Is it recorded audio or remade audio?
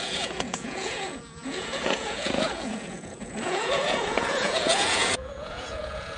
remade